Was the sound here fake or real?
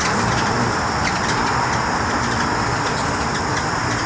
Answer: real